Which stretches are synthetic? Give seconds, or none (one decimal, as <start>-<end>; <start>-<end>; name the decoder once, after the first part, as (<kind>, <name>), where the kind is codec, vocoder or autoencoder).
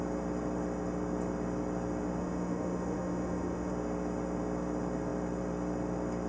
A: 2.2-3.7 (autoencoder, DAC-VAE)